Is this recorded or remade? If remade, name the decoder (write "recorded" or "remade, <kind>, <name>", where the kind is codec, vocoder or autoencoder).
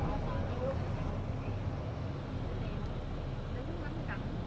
recorded